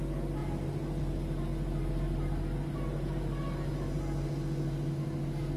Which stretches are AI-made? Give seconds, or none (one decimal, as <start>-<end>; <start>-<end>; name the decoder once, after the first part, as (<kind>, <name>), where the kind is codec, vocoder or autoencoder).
none